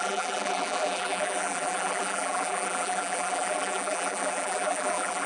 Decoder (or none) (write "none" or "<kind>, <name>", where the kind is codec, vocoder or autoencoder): vocoder, BigVGAN v2